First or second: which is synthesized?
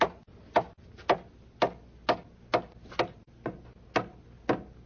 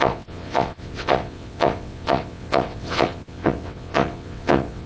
second